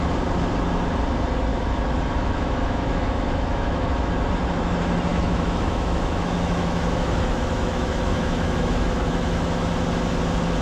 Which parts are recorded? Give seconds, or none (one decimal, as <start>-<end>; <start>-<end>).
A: 0.0-1.5; 4.1-5.1; 9.7-10.6